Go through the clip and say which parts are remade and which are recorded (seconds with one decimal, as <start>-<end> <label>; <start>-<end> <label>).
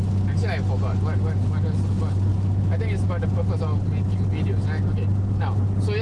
0.0-6.0 recorded